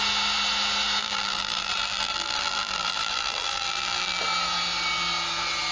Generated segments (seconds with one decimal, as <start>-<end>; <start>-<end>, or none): 1.0-4.2